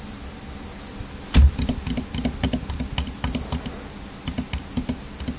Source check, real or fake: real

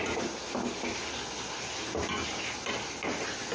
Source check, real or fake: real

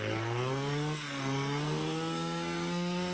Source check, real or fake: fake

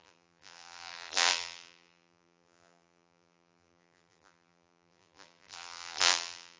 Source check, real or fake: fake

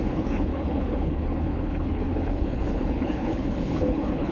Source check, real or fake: fake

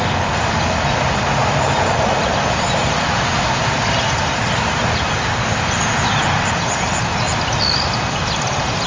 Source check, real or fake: real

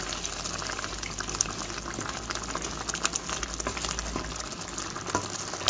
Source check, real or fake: real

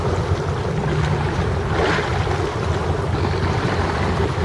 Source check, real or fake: real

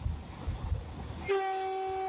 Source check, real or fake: real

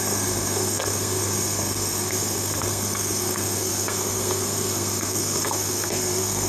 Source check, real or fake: fake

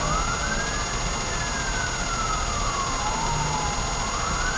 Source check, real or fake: real